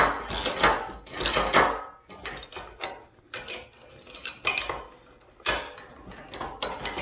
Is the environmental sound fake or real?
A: real